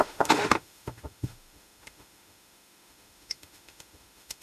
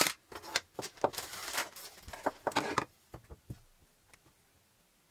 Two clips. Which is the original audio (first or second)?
second